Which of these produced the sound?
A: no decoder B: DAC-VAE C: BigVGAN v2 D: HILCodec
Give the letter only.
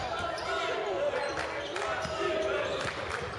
A